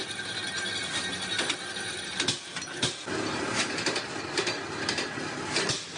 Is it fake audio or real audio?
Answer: real